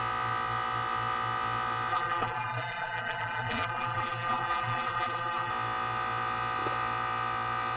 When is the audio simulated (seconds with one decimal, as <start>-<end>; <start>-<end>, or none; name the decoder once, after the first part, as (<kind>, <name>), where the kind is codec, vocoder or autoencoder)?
1.9-5.5 (vocoder, BigVGAN v2)